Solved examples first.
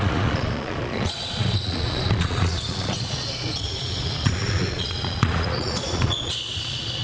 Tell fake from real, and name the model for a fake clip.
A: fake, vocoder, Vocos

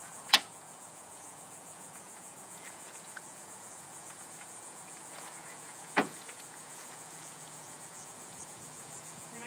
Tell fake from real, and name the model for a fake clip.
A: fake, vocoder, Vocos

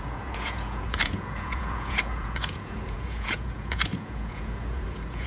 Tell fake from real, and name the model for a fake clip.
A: fake, vocoder, Vocos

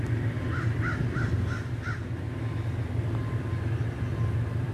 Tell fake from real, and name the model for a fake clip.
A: real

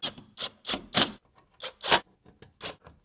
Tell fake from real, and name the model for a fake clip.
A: real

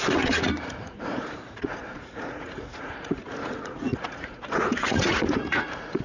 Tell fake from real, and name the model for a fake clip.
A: fake, vocoder, Vocos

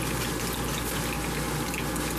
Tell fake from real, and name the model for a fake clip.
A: real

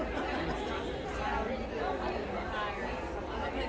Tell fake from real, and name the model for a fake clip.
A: real